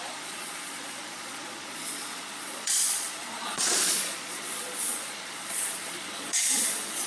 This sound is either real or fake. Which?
fake